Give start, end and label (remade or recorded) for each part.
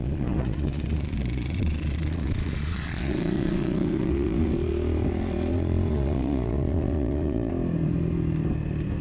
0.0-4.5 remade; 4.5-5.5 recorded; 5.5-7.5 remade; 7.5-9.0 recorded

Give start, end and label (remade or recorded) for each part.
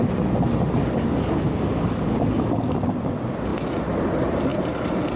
0.0-0.8 recorded; 0.8-2.7 remade; 2.7-5.2 recorded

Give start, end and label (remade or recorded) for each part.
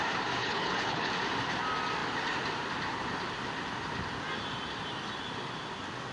0.0-0.4 recorded; 0.4-1.1 remade; 1.1-6.1 recorded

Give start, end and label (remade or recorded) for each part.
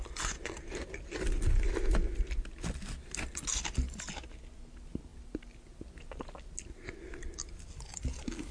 0.0-8.5 recorded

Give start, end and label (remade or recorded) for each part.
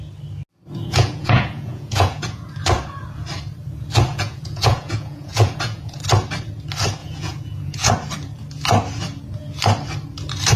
0.0-0.8 recorded; 0.8-2.5 remade; 2.5-4.1 recorded; 4.1-6.0 remade; 6.0-7.0 recorded; 7.0-7.9 remade; 7.9-10.6 recorded